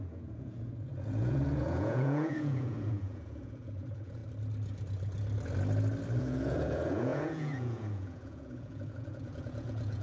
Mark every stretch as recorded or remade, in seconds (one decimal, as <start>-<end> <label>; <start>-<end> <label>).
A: 0.0-4.2 remade; 4.2-6.2 recorded; 6.2-10.0 remade